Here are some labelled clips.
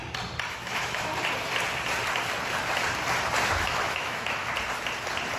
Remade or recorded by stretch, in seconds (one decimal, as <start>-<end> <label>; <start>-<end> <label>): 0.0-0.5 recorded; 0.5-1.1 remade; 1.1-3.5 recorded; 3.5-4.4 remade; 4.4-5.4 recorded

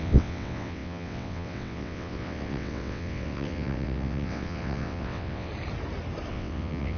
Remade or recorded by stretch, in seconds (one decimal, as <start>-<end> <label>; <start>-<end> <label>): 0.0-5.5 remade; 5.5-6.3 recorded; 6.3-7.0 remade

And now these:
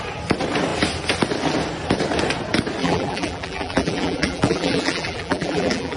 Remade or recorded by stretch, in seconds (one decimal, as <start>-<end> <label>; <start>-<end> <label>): 0.0-2.8 recorded; 2.8-6.0 remade

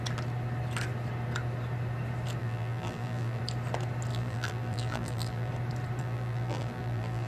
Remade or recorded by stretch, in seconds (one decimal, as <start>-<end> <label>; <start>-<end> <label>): 0.0-2.4 recorded; 2.4-3.4 remade; 3.4-4.1 recorded; 4.1-5.5 remade; 5.5-6.0 recorded; 6.0-7.3 remade

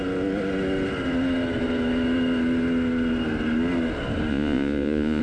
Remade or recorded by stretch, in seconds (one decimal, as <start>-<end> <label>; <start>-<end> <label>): 0.0-4.3 recorded; 4.3-5.2 remade